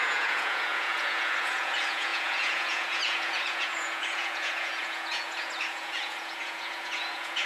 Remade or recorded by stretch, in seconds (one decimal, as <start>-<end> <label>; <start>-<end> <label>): 0.0-7.5 remade